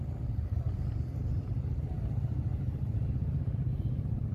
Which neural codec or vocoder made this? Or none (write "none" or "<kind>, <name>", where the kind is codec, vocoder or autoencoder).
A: vocoder, BigVGAN v2